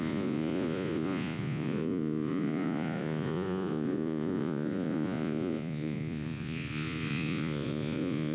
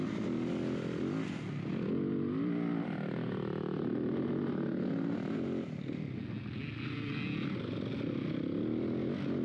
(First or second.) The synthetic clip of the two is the first